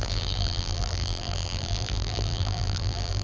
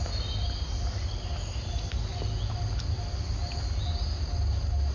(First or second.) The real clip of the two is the second